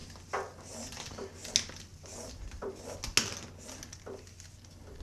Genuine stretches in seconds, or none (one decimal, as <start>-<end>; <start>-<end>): 0.0-1.9; 2.7-5.0